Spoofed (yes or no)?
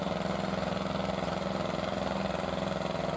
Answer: no